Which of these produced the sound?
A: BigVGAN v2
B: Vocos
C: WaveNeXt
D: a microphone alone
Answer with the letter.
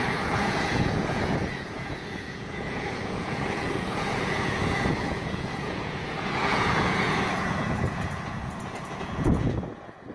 B